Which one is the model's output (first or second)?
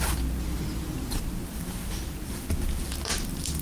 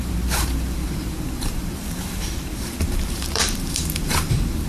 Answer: second